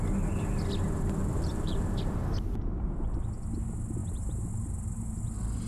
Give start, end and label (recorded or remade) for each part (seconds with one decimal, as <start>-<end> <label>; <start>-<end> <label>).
0.0-1.2 recorded; 1.2-1.9 remade; 1.9-5.7 recorded